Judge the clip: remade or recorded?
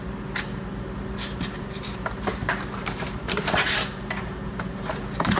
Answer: remade